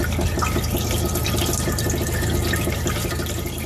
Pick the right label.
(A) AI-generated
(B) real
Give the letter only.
B